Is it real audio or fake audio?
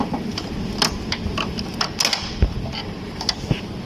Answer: real